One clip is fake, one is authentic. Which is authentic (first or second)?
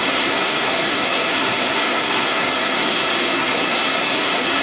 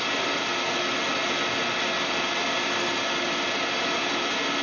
second